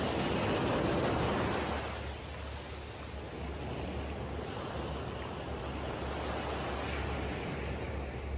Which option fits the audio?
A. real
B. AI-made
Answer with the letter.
A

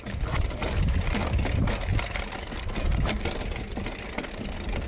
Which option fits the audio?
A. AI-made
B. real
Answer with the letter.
B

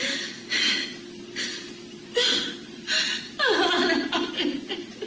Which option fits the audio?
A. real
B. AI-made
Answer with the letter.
A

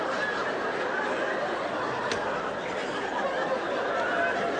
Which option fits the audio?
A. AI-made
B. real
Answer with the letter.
B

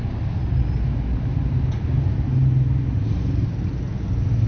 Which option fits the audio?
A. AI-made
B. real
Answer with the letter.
B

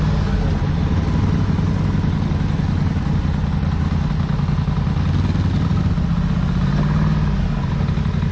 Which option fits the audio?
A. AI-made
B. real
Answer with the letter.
B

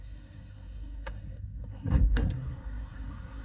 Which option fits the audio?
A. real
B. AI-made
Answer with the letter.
B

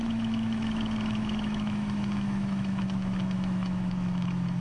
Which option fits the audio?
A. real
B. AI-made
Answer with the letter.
B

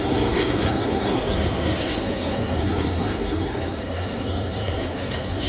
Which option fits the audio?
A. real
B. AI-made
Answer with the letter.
B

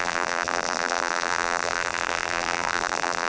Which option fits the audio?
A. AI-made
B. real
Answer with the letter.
A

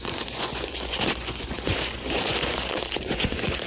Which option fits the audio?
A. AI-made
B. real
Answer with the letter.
A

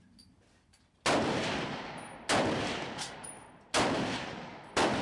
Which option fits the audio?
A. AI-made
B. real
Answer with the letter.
B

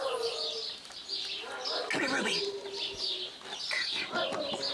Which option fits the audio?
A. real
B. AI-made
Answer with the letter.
A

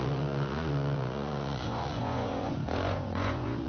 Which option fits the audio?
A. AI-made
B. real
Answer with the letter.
A